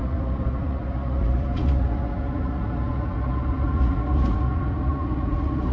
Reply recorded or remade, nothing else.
remade